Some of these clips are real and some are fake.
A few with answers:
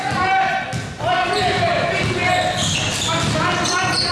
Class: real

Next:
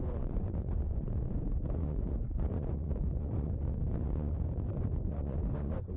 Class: fake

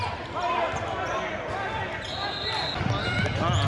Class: real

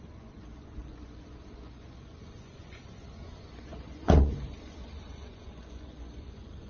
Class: fake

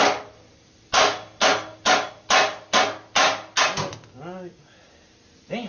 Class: real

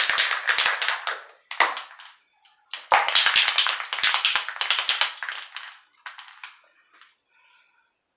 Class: real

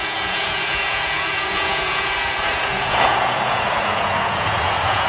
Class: fake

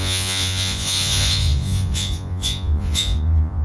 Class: fake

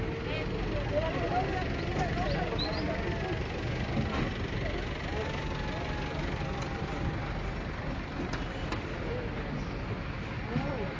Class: real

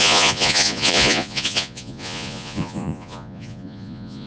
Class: fake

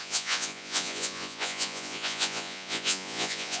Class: fake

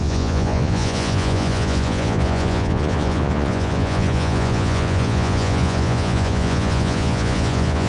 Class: fake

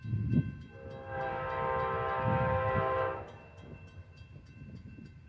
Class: real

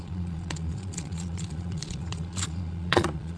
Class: fake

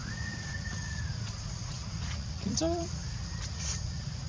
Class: fake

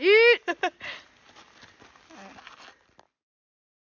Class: real